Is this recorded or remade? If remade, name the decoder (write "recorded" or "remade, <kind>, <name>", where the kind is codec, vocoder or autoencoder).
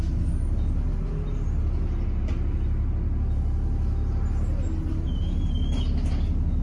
recorded